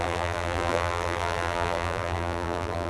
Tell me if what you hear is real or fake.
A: fake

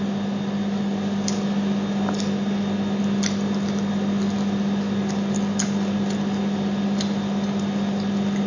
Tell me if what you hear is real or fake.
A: real